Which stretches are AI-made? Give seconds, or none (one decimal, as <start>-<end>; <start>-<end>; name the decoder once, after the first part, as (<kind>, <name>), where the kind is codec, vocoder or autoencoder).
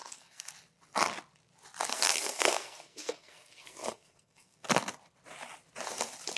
0.0-0.5 (codec, SNAC); 1.9-4.7